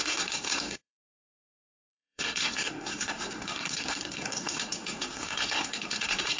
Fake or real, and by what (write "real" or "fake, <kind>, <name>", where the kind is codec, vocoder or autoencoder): fake, codec, SNAC